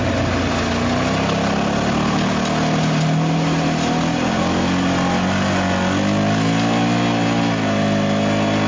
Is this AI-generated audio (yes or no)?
no